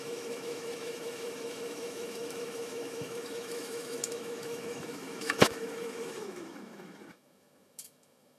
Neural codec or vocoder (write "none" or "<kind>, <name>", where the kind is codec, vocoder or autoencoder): autoencoder, DAC-VAE